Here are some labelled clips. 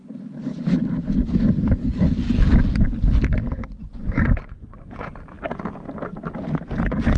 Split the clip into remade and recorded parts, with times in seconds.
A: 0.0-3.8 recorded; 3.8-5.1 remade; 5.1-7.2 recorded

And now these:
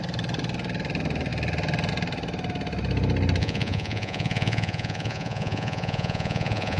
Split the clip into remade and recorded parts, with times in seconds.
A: 0.0-3.4 recorded; 3.4-6.8 remade

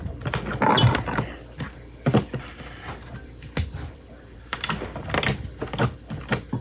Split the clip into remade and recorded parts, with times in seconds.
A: 0.0-0.7 recorded; 0.7-4.7 remade; 4.7-6.6 recorded

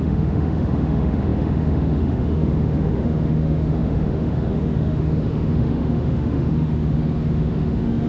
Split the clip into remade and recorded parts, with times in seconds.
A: 0.0-8.1 remade

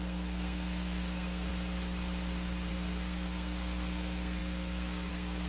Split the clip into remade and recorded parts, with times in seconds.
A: 0.0-1.5 remade; 1.5-2.7 recorded; 2.7-5.5 remade

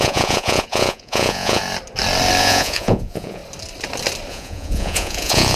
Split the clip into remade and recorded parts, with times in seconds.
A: 0.0-1.6 remade; 1.6-2.4 recorded; 2.4-3.4 remade; 3.4-4.3 recorded; 4.3-5.5 remade

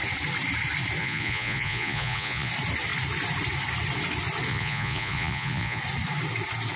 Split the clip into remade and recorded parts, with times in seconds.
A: 0.0-1.0 recorded; 1.0-2.5 remade; 2.5-4.5 recorded; 4.5-5.8 remade; 5.8-6.8 recorded